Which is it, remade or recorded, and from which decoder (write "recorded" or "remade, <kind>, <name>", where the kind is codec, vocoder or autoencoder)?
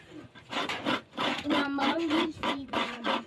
remade, vocoder, Vocos